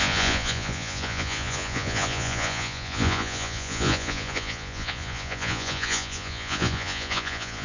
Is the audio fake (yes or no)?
yes